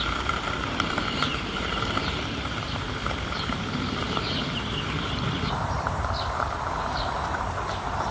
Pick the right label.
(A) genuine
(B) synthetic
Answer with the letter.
B